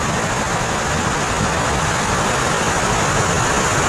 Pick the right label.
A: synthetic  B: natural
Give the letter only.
B